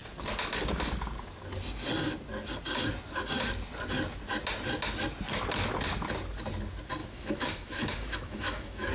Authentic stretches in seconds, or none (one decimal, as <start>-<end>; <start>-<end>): 0.0-7.0